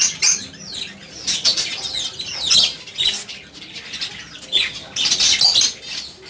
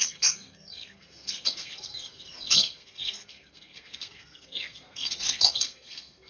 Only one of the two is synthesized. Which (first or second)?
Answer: second